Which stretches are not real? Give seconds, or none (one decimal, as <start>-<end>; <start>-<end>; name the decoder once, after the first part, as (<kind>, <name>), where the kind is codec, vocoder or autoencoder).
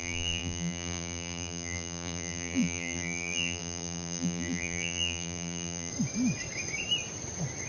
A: 0.0-5.9 (vocoder, BigVGAN v2)